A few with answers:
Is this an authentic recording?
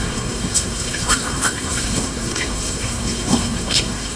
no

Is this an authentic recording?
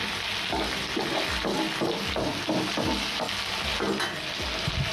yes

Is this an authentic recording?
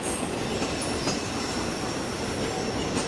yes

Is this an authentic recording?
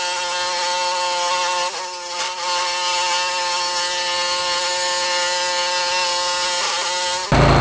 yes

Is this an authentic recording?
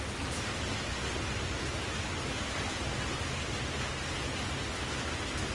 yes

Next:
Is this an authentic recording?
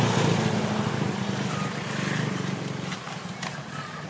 yes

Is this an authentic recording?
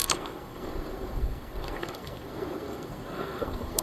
no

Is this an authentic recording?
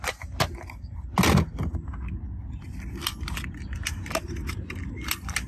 yes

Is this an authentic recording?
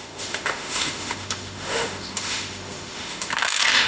no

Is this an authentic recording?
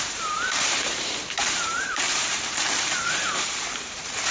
no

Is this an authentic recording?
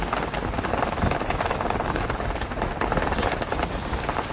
yes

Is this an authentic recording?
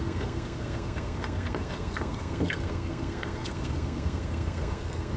no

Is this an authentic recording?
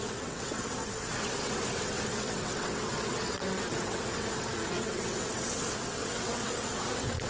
no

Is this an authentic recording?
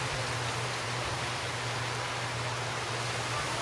yes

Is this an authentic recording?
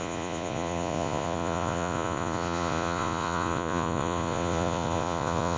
no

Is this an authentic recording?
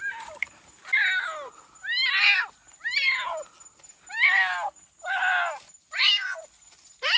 yes